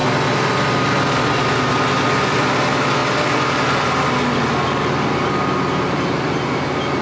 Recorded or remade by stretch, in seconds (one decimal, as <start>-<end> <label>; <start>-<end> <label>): 0.0-7.0 recorded